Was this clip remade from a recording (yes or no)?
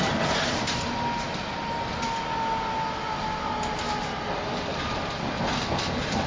no